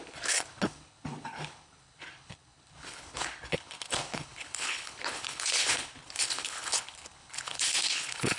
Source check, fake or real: fake